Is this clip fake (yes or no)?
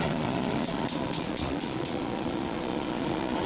yes